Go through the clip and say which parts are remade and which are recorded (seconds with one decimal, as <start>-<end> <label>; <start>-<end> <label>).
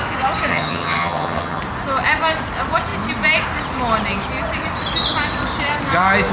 0.0-0.5 recorded; 0.5-1.6 remade; 1.6-6.3 recorded